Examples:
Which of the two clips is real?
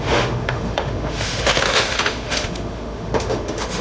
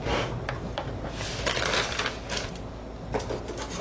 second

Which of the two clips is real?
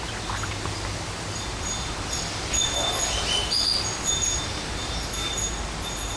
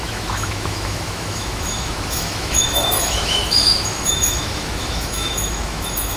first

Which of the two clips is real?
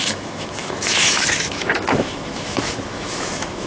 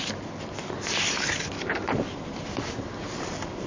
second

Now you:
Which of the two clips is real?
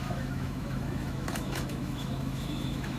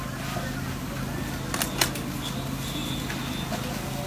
second